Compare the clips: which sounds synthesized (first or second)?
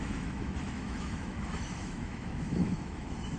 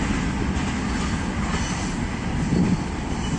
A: first